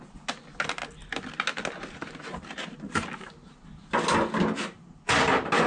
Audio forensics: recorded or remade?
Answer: recorded